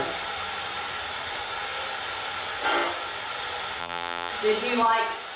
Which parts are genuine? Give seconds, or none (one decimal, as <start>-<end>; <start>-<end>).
0.0-3.8; 4.3-5.4